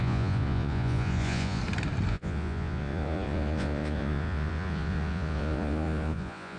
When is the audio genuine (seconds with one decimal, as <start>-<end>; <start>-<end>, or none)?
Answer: 1.6-2.1